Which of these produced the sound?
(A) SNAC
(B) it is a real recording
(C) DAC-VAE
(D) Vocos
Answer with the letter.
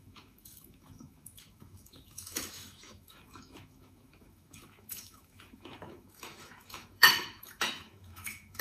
C